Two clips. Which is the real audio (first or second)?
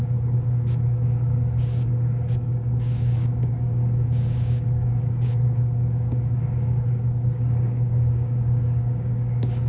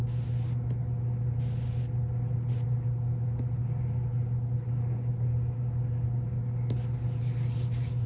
second